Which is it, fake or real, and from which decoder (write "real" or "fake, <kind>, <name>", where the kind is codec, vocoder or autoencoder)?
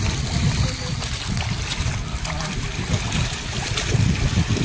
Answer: real